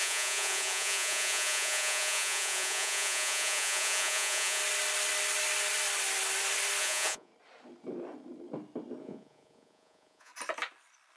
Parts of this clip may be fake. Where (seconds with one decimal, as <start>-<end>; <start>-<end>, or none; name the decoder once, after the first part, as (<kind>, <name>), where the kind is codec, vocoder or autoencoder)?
0.0-4.6 (vocoder, Vocos); 6.8-7.3; 9.0-10.3